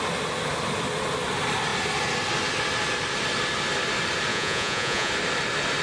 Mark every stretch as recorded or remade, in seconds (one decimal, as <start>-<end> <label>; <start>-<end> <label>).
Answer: 0.0-4.3 recorded; 4.3-5.1 remade; 5.1-5.8 recorded